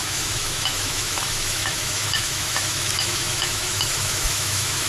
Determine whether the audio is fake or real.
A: fake